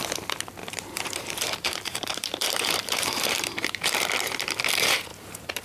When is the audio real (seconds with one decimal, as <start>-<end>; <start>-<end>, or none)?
0.0-0.6; 4.0-5.1